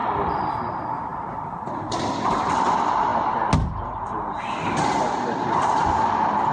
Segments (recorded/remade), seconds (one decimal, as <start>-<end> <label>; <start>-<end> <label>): 0.0-0.6 remade; 0.6-1.1 recorded; 1.1-2.3 remade; 2.3-6.5 recorded